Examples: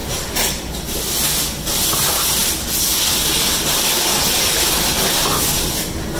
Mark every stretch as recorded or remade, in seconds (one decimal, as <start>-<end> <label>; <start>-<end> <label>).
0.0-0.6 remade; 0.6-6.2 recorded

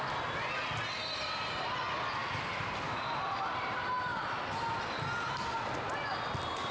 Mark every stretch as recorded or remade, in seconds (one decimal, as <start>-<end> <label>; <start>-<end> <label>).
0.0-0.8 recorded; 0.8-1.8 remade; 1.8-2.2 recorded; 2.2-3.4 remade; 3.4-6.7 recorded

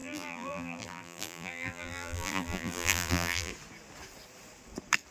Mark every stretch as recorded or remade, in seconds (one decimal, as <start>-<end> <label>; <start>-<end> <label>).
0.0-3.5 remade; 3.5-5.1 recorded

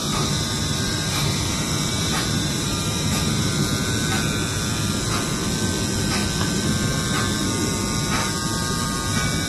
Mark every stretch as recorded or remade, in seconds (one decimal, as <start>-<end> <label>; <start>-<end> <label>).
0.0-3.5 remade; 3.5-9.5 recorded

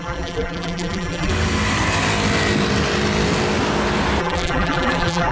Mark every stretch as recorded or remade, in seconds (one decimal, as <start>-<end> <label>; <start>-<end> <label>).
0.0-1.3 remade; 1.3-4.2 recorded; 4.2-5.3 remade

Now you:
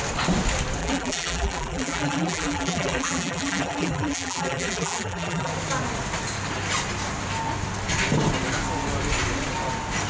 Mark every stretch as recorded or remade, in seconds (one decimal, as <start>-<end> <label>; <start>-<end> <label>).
0.0-0.8 recorded; 0.8-5.5 remade; 5.5-10.1 recorded